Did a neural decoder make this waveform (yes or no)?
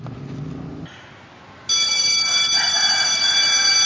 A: no